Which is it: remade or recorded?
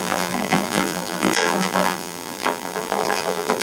remade